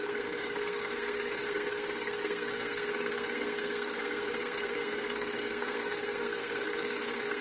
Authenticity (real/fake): fake